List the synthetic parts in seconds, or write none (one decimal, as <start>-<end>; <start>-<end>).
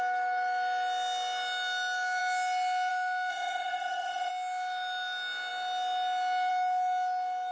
3.3-4.3